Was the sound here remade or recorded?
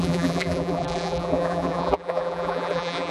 remade